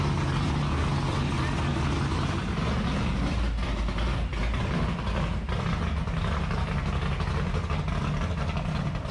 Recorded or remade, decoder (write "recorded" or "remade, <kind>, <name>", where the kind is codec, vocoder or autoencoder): recorded